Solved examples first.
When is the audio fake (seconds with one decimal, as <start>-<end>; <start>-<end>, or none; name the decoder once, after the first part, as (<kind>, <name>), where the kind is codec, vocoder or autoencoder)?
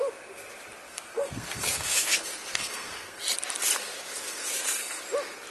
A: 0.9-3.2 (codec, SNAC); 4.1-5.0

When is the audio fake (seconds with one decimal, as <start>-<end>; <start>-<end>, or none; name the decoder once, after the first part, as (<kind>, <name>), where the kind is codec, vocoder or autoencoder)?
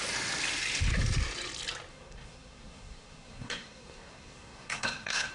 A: 1.9-5.3 (codec, SNAC)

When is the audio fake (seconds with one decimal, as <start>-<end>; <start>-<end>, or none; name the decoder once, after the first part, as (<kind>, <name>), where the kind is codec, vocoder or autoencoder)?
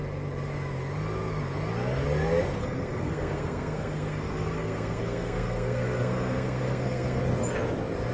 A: 2.6-7.2 (codec, SNAC)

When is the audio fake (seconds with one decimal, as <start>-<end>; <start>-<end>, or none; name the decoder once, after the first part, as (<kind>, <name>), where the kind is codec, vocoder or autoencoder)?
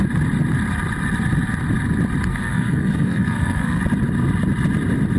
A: 2.3-3.8 (codec, SNAC)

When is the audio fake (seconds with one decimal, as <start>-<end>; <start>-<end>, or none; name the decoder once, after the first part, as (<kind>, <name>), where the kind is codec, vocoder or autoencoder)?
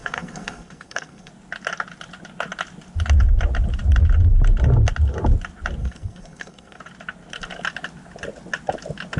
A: 0.0-1.3 (codec, SNAC); 5.8-6.8